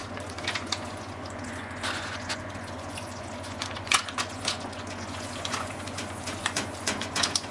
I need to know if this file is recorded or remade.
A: remade